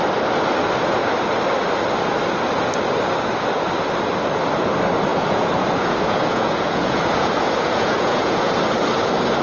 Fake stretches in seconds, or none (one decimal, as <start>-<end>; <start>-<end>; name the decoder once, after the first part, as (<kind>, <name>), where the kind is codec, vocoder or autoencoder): 5.1-8.6 (vocoder, Vocos)